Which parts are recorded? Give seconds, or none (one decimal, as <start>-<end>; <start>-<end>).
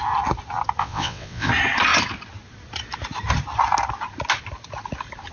0.0-0.8; 1.5-5.3